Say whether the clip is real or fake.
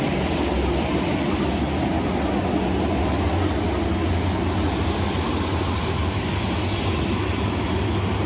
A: real